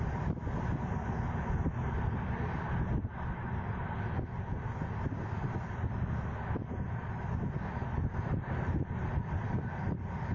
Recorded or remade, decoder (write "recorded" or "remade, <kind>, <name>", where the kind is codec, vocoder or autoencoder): recorded